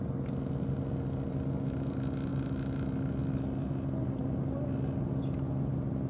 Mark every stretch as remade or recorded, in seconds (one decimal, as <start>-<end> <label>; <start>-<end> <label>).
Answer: 0.0-6.1 recorded